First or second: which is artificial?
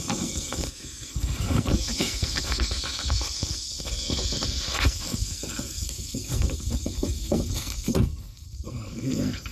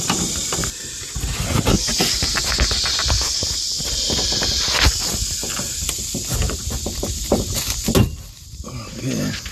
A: first